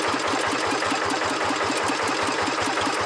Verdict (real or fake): real